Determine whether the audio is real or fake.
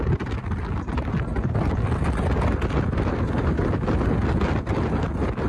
real